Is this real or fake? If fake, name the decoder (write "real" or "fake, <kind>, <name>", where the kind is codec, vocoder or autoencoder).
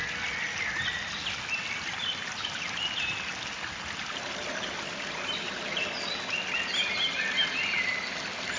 real